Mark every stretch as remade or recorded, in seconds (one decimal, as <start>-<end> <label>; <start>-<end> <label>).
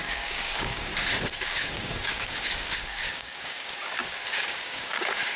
0.0-0.9 remade; 0.9-1.4 recorded; 1.4-5.4 remade